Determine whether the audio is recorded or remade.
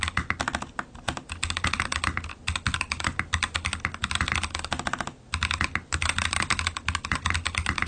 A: recorded